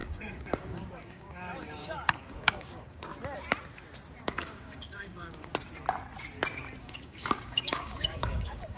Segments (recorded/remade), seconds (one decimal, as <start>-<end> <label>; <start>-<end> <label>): 0.0-3.1 remade; 3.1-4.2 recorded; 4.2-5.5 remade; 5.5-6.8 recorded; 6.8-8.8 remade

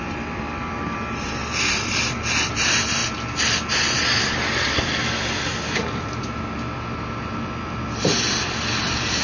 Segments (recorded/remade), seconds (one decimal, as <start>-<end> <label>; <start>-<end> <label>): 0.0-9.2 recorded

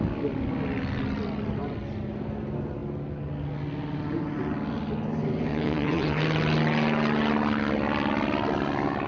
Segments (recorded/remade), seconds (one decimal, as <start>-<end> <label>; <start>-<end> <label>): 0.0-5.5 recorded; 5.5-6.2 remade; 6.2-9.1 recorded

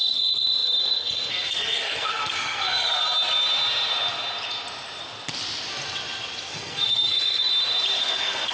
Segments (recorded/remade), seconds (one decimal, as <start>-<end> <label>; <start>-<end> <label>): 0.0-3.0 remade; 3.0-6.5 recorded; 6.5-7.5 remade; 7.5-8.0 recorded; 8.0-8.5 remade

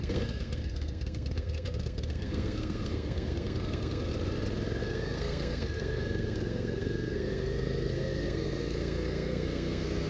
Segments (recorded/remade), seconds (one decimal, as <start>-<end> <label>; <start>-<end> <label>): 0.0-4.1 remade; 4.1-4.8 recorded; 4.8-10.1 remade

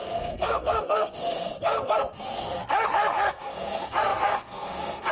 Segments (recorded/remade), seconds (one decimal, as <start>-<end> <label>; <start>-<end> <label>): 0.0-2.6 remade; 2.6-3.3 recorded; 3.3-5.1 remade

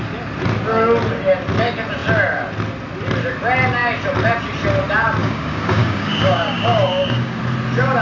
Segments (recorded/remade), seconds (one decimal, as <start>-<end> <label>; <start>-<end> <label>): 0.0-5.2 recorded; 5.2-7.4 remade; 7.4-8.0 recorded